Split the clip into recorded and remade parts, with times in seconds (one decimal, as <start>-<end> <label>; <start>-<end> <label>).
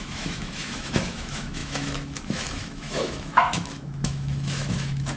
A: 0.0-5.2 remade